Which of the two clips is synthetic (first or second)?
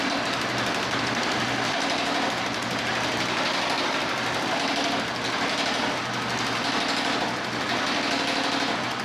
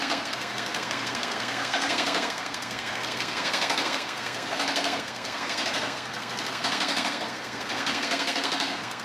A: second